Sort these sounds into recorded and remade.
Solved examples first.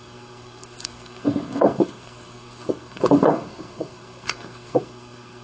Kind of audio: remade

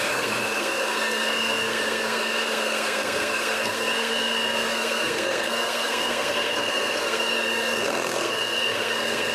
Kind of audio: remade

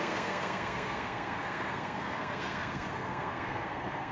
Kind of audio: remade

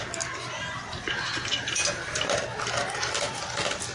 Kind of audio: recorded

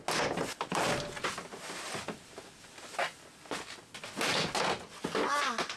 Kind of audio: recorded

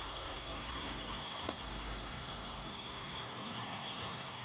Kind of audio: remade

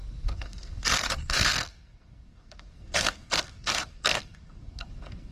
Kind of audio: remade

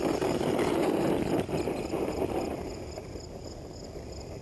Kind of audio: recorded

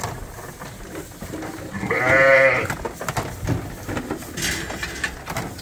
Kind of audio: recorded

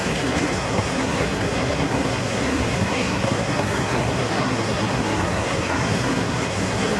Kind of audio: remade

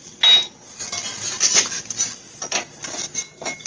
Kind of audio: recorded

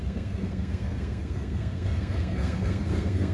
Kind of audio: remade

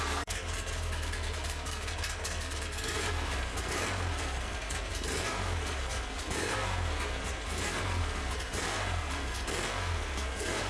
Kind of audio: remade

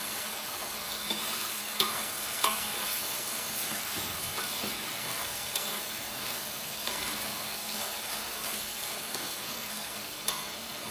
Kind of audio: remade